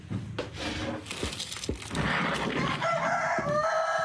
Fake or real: real